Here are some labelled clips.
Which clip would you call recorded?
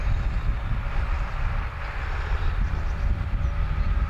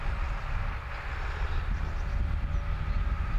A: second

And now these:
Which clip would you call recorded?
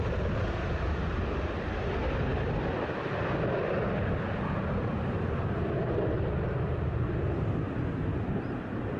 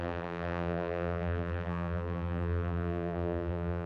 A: first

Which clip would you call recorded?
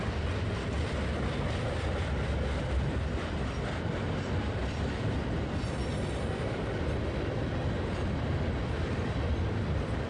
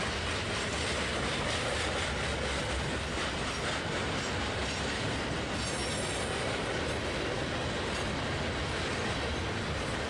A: second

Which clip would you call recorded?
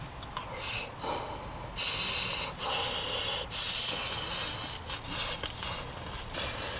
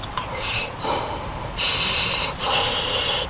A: first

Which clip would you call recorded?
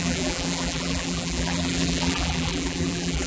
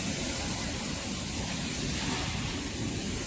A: second